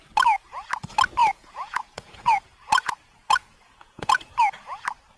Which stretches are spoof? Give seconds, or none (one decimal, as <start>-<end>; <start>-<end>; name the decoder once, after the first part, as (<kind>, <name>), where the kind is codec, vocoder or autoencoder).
1.2-4.3 (vocoder, Vocos)